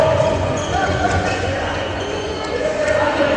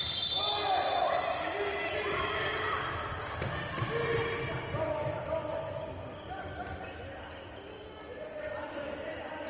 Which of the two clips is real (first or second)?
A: second